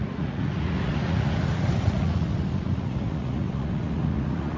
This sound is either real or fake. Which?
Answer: fake